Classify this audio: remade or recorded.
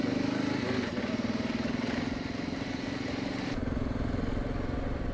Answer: recorded